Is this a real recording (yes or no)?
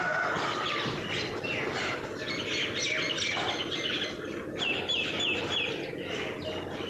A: yes